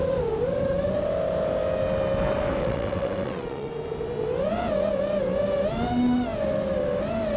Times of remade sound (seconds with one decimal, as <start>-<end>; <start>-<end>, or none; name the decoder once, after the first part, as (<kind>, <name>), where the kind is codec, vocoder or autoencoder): 2.6-3.7 (vocoder, WaveNeXt)